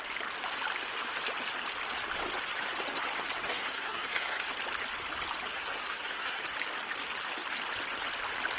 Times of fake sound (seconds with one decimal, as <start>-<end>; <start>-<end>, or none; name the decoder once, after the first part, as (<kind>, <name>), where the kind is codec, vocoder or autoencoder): 3.4-4.5 (codec, SNAC); 5.5-6.4